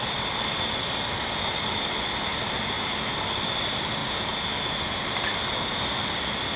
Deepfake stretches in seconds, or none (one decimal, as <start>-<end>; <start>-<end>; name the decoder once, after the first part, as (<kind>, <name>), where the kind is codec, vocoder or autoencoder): none